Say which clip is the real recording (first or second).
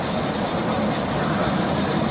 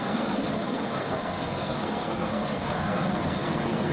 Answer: first